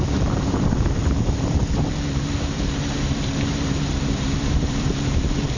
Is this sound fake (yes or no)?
yes